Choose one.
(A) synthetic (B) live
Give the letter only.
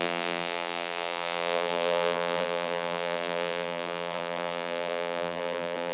A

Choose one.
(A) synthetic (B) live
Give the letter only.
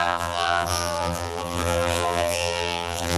A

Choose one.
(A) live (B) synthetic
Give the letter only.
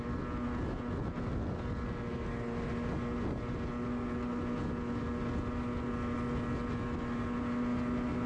A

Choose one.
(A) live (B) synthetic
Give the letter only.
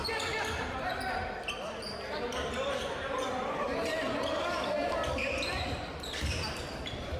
B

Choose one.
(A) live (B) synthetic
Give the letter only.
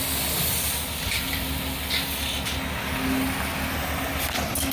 A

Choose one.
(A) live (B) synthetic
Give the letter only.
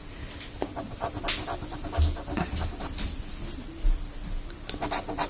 A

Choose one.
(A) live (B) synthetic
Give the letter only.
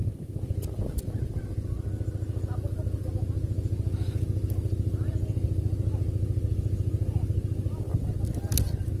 A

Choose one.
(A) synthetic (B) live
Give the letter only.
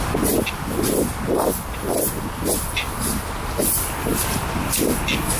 B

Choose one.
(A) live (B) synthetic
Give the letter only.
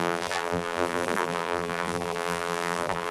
B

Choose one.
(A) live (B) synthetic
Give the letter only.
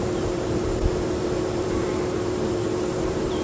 B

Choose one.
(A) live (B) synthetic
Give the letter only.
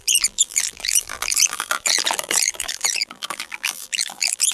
B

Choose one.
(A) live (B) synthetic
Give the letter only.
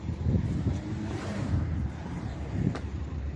B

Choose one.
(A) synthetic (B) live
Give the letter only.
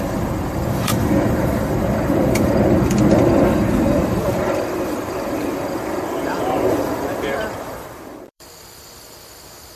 A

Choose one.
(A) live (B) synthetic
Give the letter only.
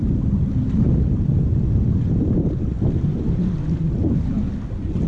A